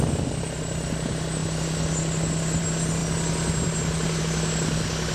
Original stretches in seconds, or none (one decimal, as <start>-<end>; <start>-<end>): 0.0-5.1